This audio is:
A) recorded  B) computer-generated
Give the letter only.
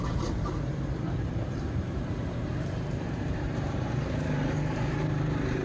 B